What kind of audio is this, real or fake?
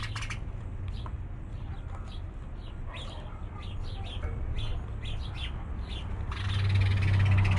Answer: real